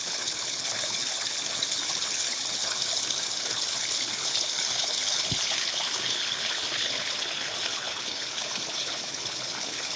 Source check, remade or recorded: remade